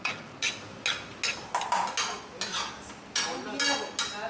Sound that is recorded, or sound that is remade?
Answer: recorded